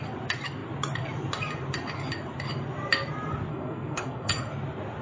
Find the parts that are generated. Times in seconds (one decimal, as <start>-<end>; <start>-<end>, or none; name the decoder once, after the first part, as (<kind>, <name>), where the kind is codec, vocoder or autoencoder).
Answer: 3.5-4.5 (codec, SNAC)